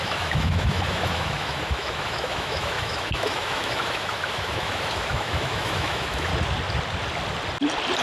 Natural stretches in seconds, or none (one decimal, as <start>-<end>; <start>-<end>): 6.3-8.0